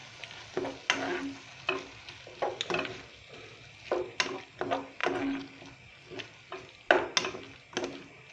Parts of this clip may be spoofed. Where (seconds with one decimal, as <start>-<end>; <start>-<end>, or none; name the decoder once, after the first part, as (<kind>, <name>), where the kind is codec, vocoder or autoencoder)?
none